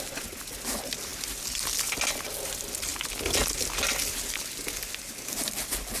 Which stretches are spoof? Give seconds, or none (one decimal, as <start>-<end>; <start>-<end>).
none